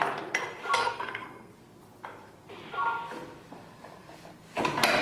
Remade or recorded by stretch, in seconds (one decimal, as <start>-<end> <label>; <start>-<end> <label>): 0.0-0.8 recorded; 0.8-1.5 remade; 1.5-5.0 recorded